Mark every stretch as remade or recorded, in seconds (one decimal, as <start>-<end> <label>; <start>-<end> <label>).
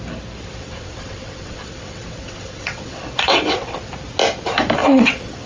0.0-0.6 recorded; 0.6-3.9 remade; 3.9-4.8 recorded; 4.8-5.5 remade